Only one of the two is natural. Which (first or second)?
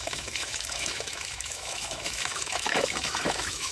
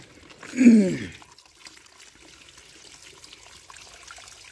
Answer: second